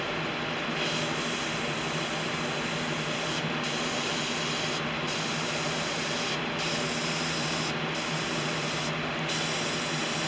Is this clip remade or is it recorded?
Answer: recorded